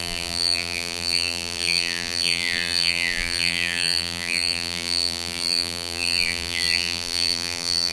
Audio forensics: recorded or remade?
remade